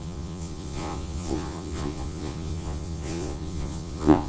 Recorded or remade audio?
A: remade